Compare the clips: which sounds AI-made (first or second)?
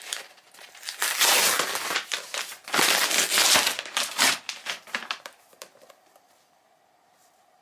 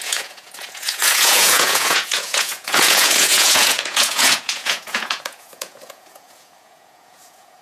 second